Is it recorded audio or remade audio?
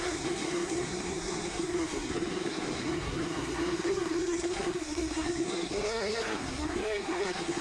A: remade